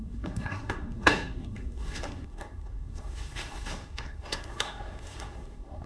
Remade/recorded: remade